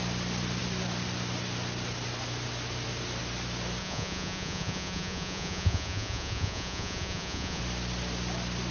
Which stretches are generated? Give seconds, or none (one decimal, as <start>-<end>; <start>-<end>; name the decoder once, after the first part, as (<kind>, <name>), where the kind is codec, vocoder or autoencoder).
3.8-7.6 (vocoder, Vocos)